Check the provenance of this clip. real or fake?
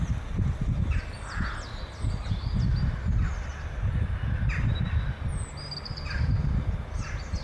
real